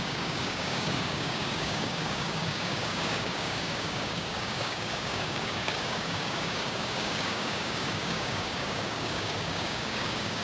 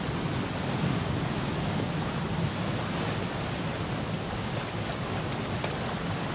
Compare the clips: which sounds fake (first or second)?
first